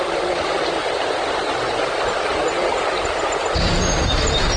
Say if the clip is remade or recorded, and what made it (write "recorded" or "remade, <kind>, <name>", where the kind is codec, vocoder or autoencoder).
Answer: recorded